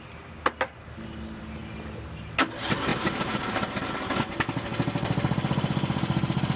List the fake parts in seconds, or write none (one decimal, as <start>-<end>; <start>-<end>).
none